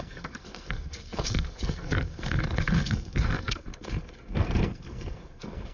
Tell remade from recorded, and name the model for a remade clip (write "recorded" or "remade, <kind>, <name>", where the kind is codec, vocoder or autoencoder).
remade, codec, SNAC